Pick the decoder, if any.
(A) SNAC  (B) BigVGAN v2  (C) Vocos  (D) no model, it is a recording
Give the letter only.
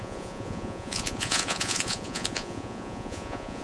C